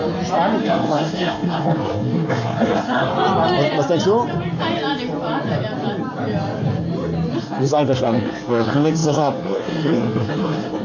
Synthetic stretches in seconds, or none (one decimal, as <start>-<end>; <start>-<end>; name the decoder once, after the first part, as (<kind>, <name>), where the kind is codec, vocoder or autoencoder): 0.6-3.1 (codec, SNAC); 7.4-10.8